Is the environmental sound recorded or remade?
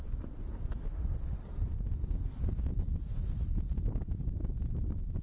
remade